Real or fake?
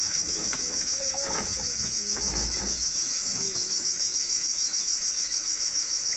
fake